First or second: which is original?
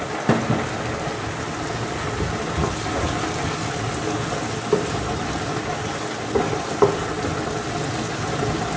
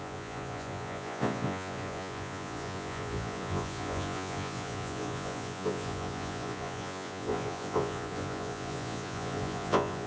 first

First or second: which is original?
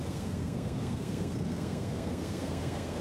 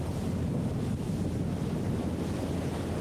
second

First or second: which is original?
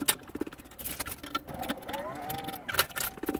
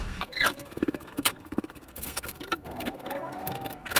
first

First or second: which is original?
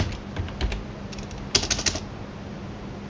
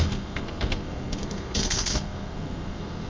first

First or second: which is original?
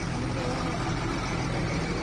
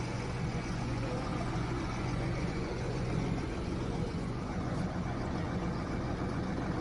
first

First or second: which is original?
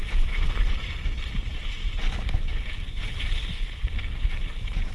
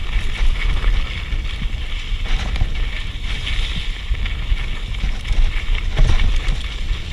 second